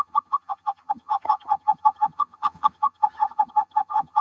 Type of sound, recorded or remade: remade